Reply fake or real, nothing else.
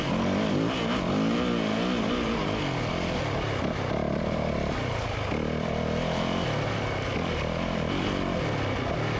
real